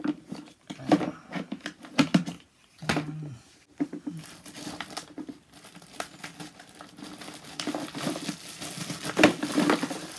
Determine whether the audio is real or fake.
real